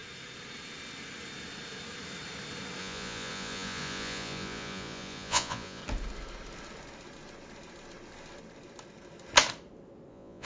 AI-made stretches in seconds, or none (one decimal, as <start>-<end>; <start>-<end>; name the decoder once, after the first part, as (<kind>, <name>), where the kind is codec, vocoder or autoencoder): 2.8-5.8 (vocoder, Vocos); 10.1-10.5